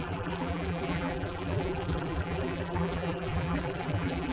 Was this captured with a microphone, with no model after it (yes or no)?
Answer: no